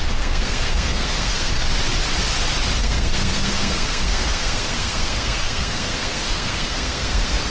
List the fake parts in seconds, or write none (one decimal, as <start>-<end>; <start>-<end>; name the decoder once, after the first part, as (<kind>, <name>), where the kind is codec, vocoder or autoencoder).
0.0-1.5 (codec, SNAC); 2.8-7.5